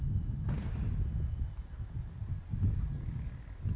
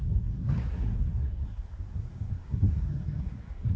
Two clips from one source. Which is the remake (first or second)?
second